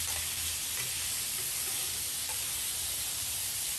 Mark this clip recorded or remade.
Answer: recorded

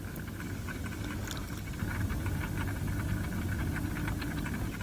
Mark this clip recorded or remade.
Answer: recorded